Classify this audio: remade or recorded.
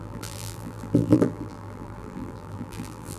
remade